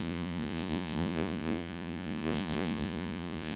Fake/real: fake